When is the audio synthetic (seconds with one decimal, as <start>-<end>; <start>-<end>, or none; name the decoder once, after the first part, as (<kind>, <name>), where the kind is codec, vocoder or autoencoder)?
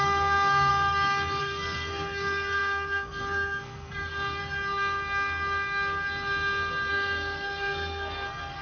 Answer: 0.0-0.7 (codec, SNAC); 1.4-4.4; 6.9-8.6